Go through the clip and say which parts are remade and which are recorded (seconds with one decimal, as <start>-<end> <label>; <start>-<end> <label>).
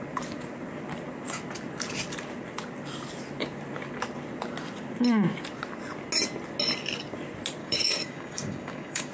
0.0-7.6 recorded; 7.6-9.1 remade